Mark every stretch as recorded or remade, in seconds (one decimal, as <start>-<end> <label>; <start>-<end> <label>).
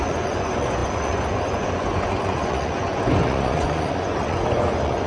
0.0-5.1 remade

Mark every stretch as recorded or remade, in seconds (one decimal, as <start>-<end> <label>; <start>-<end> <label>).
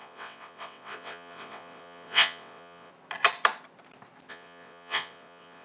0.0-2.9 remade; 2.9-4.3 recorded; 4.3-5.6 remade